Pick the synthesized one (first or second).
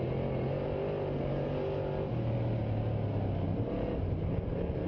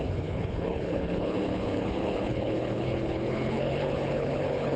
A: second